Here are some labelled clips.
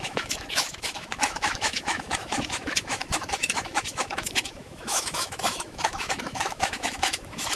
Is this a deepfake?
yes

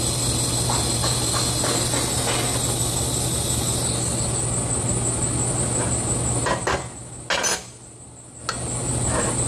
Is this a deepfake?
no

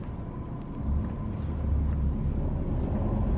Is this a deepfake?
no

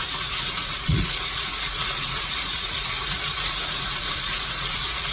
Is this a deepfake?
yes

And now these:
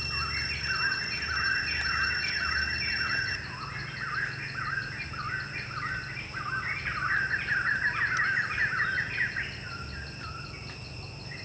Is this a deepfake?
no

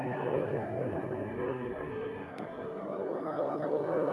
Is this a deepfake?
yes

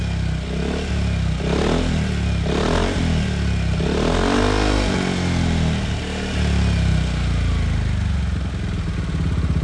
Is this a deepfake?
no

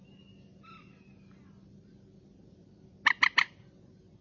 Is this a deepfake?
no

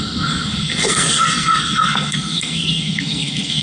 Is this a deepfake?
yes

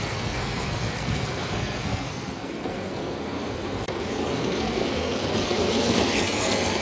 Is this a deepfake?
yes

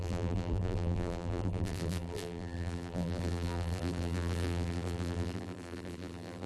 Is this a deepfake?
yes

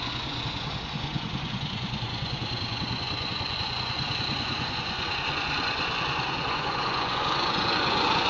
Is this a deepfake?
yes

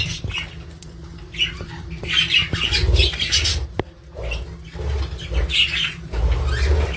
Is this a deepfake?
no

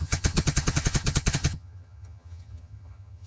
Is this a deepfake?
yes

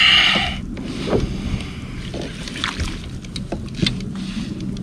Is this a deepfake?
no